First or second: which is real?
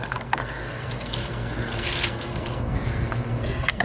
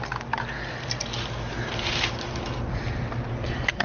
second